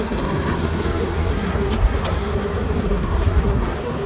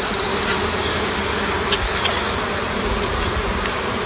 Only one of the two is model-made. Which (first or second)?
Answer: first